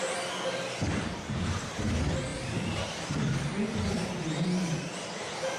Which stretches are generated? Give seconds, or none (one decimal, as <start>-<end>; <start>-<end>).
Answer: 2.3-5.6